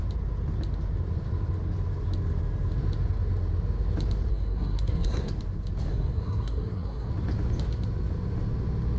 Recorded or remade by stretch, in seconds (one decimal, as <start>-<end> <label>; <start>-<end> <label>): 0.0-4.3 recorded; 4.3-5.3 remade; 5.3-5.9 recorded; 5.9-7.1 remade; 7.1-9.0 recorded